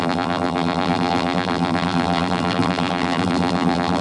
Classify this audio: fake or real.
fake